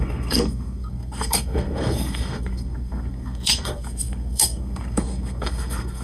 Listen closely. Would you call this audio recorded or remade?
remade